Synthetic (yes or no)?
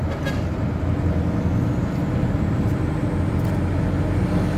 no